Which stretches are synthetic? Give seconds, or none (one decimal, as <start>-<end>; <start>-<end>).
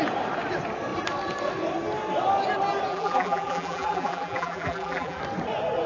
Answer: 2.9-5.2